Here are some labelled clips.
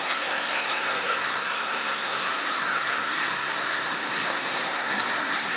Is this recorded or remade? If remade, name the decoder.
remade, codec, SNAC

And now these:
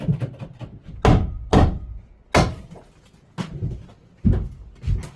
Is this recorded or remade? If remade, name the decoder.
recorded